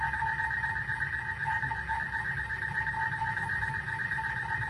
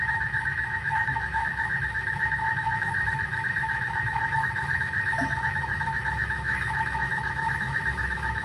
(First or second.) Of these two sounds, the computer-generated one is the second